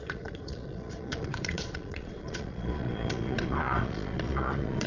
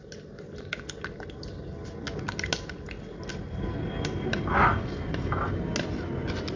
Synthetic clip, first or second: first